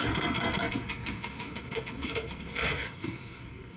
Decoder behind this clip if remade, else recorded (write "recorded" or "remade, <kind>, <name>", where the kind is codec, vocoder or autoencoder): remade, codec, SNAC